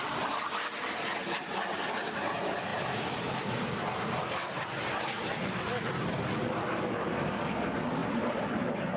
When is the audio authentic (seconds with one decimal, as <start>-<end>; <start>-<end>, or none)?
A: 0.0-2.7; 5.0-8.0